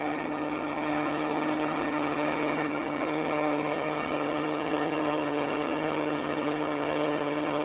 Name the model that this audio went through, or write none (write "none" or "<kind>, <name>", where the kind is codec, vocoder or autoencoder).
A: vocoder, HiFi-GAN